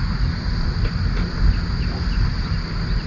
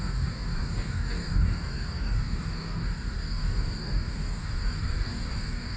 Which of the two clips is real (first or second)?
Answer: first